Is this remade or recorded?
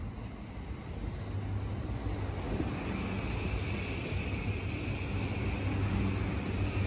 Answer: recorded